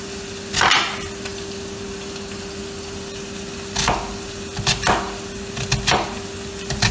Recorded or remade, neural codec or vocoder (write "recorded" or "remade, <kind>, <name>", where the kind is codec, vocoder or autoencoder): recorded